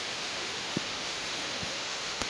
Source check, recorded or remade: remade